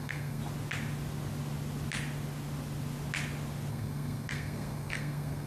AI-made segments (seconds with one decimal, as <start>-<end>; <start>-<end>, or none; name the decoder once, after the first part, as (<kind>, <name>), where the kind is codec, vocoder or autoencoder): 0.0-0.4 (codec, SNAC); 3.7-5.5